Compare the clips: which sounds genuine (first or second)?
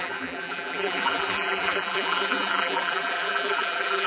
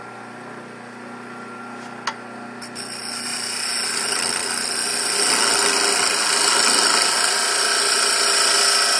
second